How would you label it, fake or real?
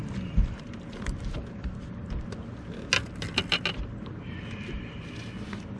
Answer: real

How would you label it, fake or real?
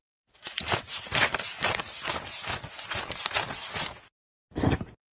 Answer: real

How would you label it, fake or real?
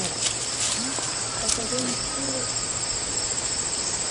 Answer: fake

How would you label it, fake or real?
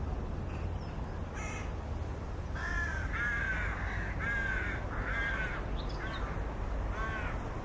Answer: real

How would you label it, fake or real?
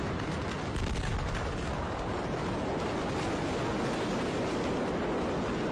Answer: real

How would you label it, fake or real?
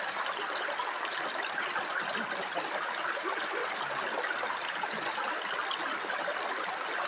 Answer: real